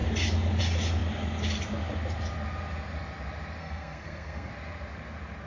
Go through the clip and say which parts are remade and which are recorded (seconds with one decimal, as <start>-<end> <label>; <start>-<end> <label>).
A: 0.0-3.6 recorded; 3.6-4.5 remade; 4.5-5.5 recorded